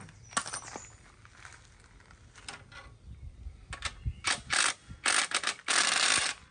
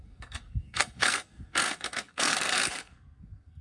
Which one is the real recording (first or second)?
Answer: first